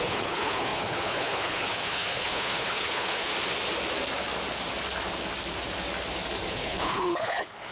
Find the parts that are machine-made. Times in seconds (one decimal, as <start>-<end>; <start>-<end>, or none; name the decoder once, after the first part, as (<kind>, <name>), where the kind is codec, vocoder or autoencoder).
0.0-3.3 (codec, HILCodec); 6.5-7.7